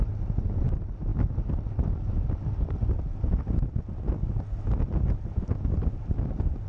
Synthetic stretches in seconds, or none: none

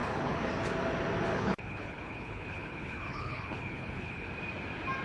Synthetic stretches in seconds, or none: 0.0-0.5 (codec, HILCodec); 1.3-4.3

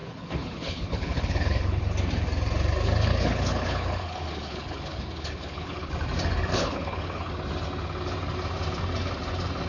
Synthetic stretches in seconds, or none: 0.0-1.8 (codec, HILCodec); 3.1-5.9; 6.5-7.3

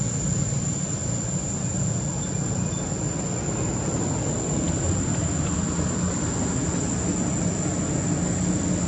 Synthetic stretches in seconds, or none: none

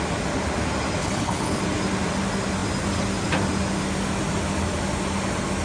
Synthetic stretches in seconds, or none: 1.0-1.6 (codec, HILCodec)